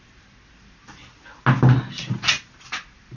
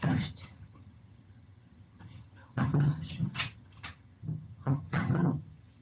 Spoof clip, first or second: second